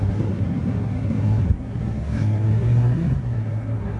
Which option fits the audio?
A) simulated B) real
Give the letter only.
A